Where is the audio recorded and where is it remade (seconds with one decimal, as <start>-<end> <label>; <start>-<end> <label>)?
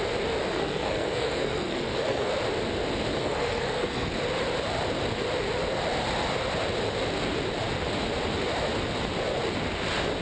0.0-0.4 recorded; 0.4-2.3 remade; 2.3-3.2 recorded; 3.2-4.1 remade; 4.1-10.2 recorded